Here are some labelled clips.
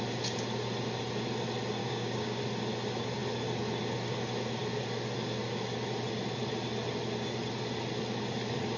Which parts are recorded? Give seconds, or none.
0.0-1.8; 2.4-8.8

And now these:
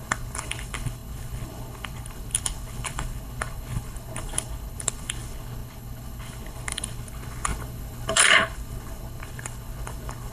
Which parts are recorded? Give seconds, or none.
none

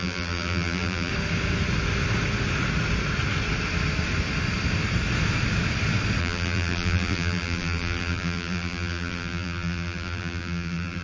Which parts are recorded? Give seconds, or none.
1.1-6.2

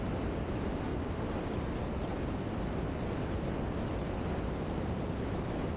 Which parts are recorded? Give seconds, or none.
0.0-0.9; 1.6-2.1

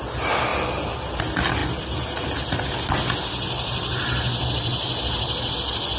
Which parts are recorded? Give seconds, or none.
0.0-6.0